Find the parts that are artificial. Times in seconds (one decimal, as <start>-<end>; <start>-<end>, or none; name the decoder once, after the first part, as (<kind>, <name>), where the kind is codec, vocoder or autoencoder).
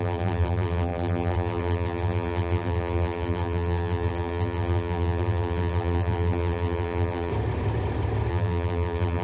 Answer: 0.0-7.3 (vocoder, BigVGAN v2); 8.3-9.2